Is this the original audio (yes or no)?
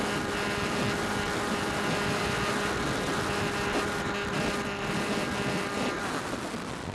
yes